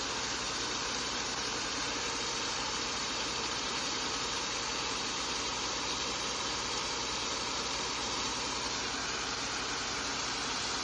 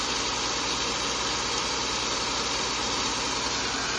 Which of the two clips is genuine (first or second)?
second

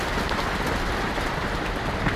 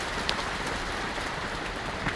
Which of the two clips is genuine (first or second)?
first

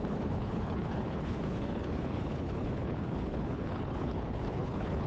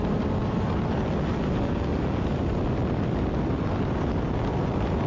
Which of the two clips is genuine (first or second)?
second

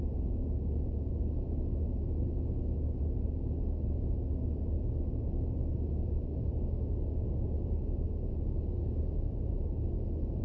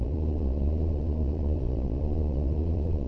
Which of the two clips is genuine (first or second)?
first